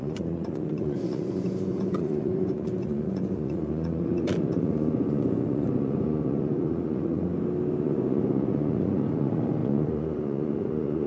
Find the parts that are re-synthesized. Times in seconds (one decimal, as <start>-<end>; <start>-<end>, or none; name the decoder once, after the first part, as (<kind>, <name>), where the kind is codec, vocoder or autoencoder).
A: 0.0-7.3 (vocoder, Vocos); 7.8-11.1